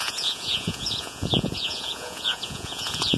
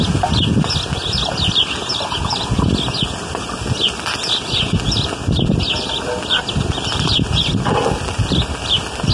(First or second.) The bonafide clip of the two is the second